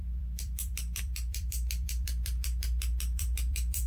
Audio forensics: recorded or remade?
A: remade